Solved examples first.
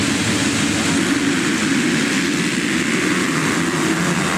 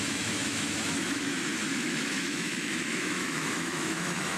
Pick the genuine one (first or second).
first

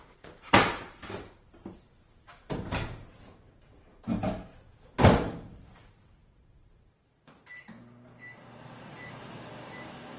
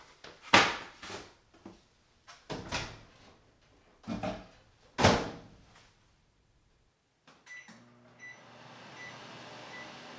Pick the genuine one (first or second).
second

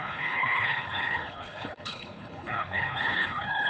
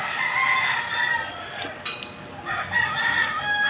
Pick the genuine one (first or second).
second